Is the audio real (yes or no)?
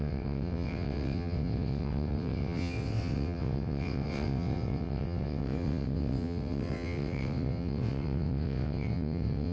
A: no